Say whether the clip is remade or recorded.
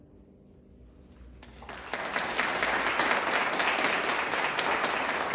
recorded